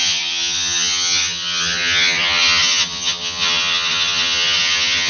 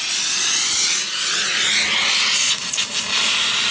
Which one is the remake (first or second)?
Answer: first